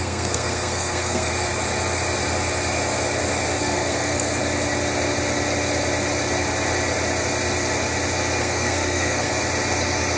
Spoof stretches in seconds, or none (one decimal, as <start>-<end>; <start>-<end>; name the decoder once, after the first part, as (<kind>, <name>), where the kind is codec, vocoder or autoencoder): 0.0-1.3 (codec, SNAC); 3.6-4.4; 8.4-9.3